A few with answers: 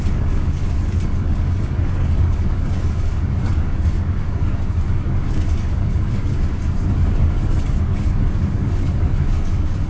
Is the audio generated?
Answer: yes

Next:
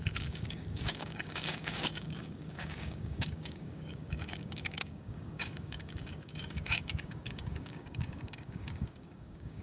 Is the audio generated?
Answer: yes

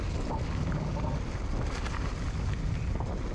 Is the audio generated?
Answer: no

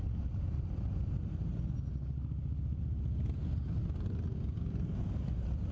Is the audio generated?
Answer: no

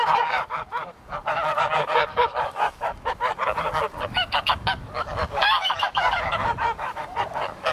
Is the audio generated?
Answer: yes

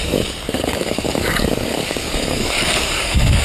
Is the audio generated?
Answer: yes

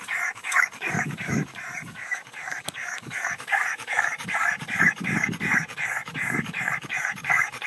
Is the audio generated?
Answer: yes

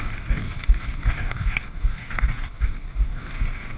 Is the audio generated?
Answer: yes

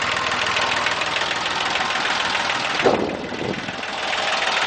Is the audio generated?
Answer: no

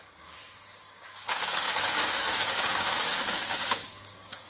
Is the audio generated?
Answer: yes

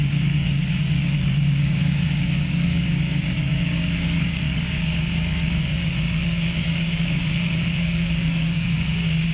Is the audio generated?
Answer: yes